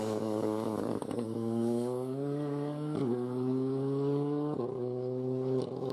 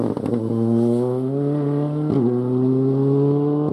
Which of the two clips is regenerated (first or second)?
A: first